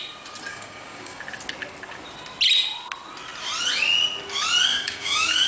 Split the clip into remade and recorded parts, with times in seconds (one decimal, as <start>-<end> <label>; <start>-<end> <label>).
0.0-0.5 recorded; 0.5-1.2 remade; 1.2-4.7 recorded; 4.7-5.5 remade